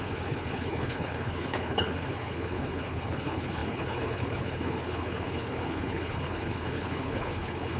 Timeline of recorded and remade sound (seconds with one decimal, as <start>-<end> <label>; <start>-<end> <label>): 0.0-7.8 remade